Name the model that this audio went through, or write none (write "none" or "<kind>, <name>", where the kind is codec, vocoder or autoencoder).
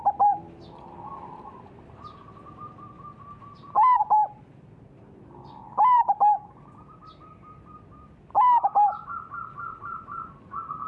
vocoder, BigVGAN v2